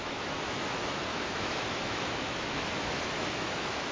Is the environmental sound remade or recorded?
remade